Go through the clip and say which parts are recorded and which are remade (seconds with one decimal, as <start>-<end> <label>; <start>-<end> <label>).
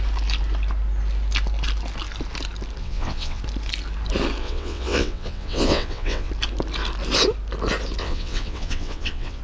0.0-2.8 recorded; 2.8-3.4 remade; 3.4-4.4 recorded; 4.4-6.3 remade; 6.3-8.0 recorded; 8.0-9.4 remade